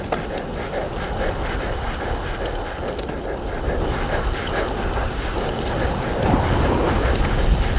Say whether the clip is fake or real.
real